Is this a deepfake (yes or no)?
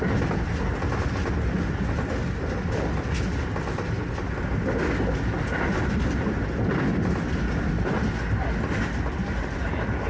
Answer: no